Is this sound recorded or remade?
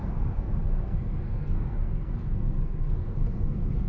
remade